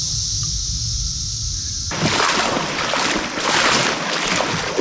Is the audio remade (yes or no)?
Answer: no